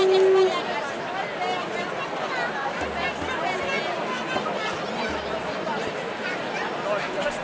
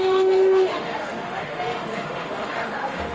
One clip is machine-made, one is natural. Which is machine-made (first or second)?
second